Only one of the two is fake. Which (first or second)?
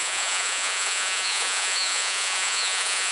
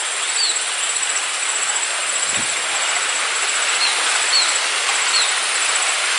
first